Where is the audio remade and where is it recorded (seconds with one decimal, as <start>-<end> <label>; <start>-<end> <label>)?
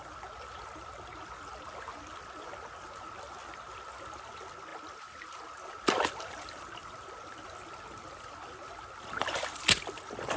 0.0-10.4 recorded